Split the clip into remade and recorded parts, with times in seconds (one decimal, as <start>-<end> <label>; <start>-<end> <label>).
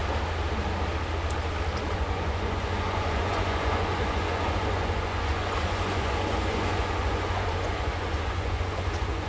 0.0-1.9 recorded; 1.9-9.3 remade